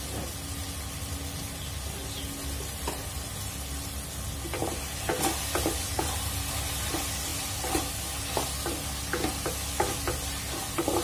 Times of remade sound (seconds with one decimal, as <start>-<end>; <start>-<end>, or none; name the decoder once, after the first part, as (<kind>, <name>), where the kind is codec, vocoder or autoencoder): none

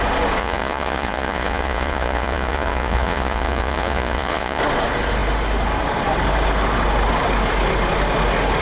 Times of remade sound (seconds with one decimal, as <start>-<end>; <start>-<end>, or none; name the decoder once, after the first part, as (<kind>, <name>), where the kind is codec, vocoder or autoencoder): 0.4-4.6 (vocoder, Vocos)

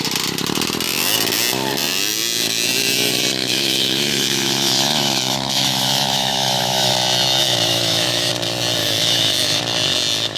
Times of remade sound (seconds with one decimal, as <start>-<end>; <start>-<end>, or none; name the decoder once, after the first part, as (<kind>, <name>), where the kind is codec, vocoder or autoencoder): 3.4-6.9 (autoencoder, DAC-VAE); 7.4-8.3; 8.8-9.6

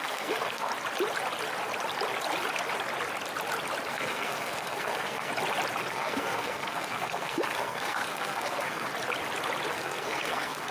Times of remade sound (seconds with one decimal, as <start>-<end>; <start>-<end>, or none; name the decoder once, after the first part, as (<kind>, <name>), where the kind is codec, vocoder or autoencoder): 0.0-0.7 (codec, SNAC); 3.9-5.3; 5.9-8.9; 9.7-10.7

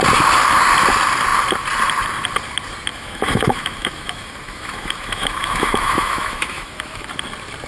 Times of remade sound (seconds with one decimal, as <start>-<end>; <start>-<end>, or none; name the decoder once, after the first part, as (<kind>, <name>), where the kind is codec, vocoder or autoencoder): 2.9-7.1 (autoencoder, DAC-VAE)

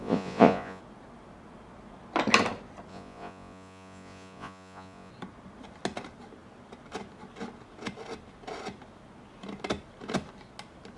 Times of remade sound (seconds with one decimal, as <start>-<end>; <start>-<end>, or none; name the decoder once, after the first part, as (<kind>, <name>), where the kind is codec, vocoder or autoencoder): 0.0-0.8 (vocoder, Vocos); 2.9-5.1

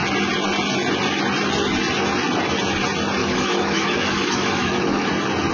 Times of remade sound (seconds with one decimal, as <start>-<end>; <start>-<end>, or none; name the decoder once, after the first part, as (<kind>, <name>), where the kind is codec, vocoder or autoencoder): 3.2-5.1 (autoencoder, DAC-VAE)